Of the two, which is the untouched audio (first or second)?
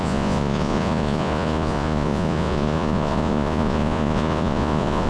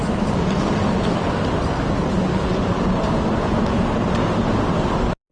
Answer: second